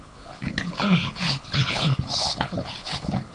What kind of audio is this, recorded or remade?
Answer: remade